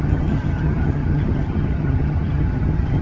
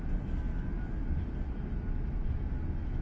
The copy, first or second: first